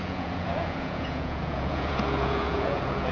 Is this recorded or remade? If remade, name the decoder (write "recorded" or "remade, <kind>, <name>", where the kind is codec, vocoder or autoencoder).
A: remade, vocoder, Vocos